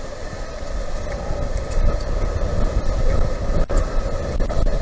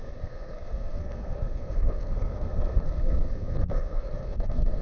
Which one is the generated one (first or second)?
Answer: second